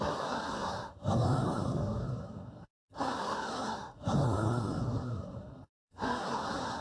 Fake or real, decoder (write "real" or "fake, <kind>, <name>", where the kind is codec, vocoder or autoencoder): fake, codec, SNAC